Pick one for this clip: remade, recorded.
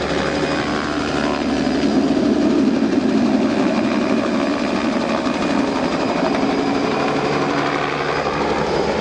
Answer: recorded